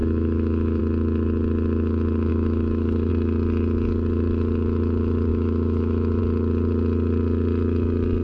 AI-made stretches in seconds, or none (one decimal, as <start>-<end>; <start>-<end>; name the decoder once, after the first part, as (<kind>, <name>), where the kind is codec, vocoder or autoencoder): 0.0-0.8 (autoencoder, DAC-VAE); 2.3-3.1; 5.3-6.2